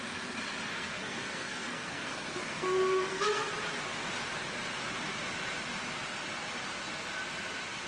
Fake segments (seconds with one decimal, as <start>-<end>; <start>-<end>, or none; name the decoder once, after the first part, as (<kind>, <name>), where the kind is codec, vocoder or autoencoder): 0.7-3.5 (codec, SNAC)